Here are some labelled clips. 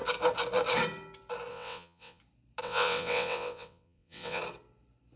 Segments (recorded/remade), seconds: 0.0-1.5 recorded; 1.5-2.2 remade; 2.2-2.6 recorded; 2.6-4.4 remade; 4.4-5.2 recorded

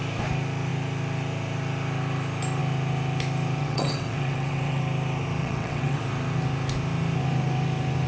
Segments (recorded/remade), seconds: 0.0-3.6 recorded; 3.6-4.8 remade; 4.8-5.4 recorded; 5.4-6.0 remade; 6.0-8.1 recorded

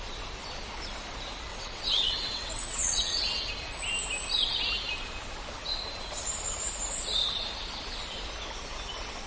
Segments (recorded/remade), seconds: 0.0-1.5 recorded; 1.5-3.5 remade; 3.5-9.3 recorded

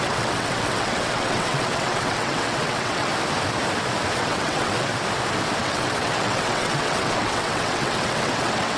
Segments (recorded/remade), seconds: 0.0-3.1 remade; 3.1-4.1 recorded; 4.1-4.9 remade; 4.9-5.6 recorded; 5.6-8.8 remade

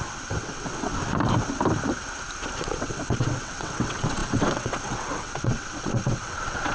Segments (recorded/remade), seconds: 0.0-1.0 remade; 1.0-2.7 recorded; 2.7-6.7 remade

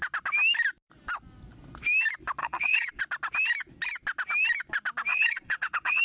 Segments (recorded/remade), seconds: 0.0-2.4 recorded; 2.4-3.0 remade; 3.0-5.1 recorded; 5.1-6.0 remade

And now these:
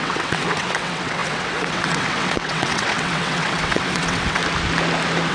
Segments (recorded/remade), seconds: 0.0-4.4 remade; 4.4-5.3 recorded